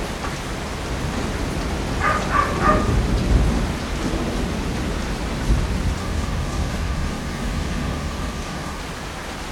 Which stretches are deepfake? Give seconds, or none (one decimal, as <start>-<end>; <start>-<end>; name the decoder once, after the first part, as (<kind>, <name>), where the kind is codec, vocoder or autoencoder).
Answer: 6.0-8.8 (codec, DAC)